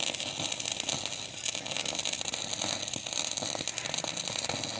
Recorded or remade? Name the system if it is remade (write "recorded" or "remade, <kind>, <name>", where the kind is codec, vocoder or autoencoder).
recorded